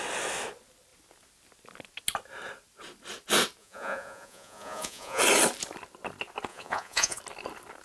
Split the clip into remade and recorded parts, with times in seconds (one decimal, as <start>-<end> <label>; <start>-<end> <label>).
0.0-3.6 recorded; 3.6-5.2 remade; 5.2-6.5 recorded; 6.5-7.2 remade; 7.2-7.8 recorded